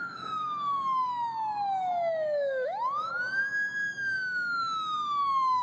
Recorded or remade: remade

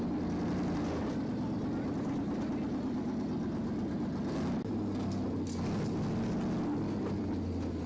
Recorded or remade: recorded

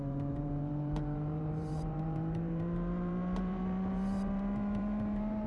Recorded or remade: remade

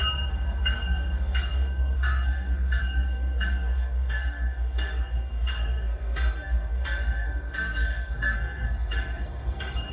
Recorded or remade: remade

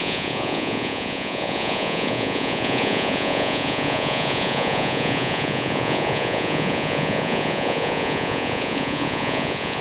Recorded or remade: remade